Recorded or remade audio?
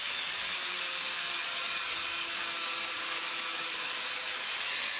remade